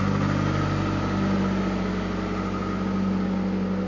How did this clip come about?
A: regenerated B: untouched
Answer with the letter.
B